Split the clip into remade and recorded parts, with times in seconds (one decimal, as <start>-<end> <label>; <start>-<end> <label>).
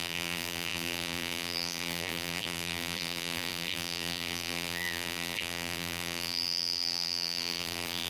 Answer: 0.0-8.1 remade